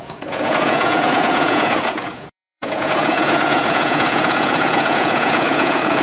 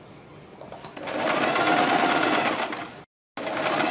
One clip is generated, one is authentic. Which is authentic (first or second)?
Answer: second